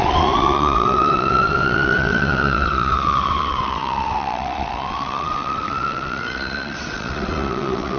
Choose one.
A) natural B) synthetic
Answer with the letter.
B